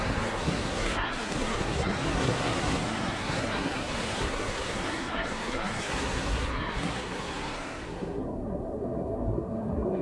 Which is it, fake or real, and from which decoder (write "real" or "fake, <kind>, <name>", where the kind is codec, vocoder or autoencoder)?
fake, codec, SNAC